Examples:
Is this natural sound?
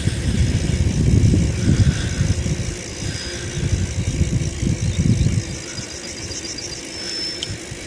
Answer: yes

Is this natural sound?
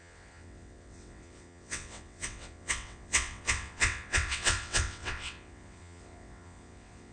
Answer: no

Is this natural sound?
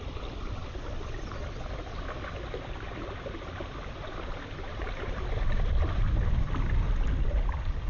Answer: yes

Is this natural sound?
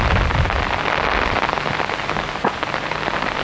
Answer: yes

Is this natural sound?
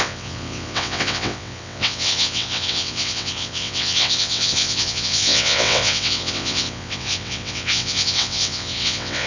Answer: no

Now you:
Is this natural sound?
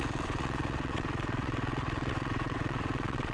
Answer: no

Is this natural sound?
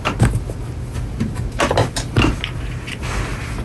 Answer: yes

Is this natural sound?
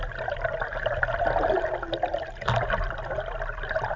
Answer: yes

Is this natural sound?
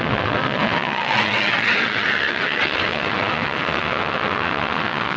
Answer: no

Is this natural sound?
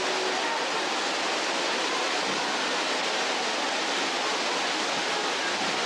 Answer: yes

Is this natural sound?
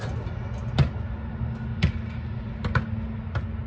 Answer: yes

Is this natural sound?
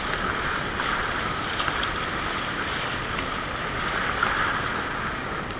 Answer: yes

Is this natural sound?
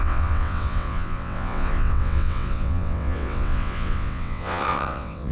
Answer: no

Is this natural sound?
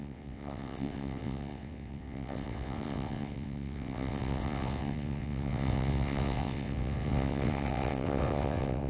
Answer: no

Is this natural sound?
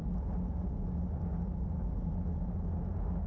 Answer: yes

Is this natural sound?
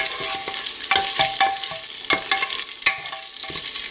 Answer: yes